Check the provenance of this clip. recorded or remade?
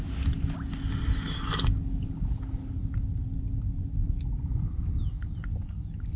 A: recorded